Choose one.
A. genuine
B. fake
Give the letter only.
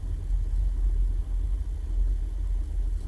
A